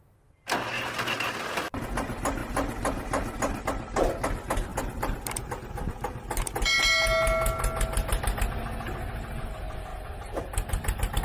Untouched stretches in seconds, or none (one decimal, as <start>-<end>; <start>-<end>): 0.0-9.9